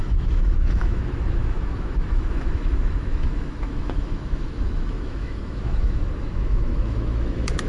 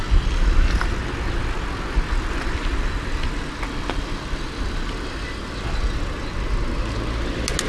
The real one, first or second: second